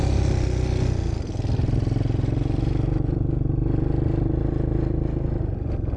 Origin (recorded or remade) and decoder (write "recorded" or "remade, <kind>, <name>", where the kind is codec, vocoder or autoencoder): recorded